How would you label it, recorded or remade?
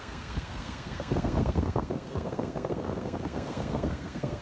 remade